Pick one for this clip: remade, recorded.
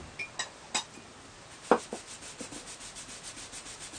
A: recorded